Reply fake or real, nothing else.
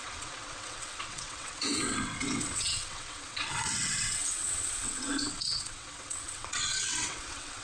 fake